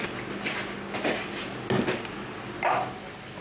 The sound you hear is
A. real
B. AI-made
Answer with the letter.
A